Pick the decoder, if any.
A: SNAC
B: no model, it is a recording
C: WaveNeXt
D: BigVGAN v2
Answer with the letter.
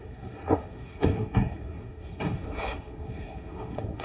A